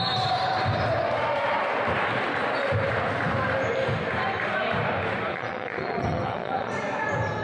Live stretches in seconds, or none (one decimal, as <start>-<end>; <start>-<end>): 0.0-5.3; 6.7-7.4

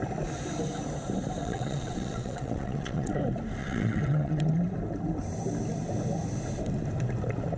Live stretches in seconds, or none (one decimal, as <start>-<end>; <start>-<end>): 0.0-1.4; 3.2-3.6; 4.5-7.6

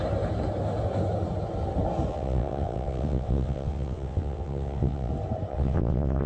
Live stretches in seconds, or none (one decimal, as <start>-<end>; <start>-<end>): 0.0-2.1; 5.1-5.5

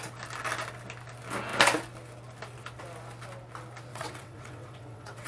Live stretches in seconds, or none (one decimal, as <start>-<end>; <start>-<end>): 0.0-3.9